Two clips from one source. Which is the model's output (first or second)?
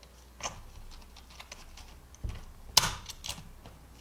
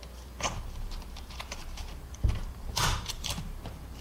second